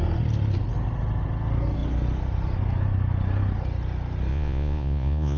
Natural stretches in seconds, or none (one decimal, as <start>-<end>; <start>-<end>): 0.0-4.3